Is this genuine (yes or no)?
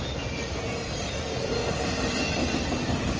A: yes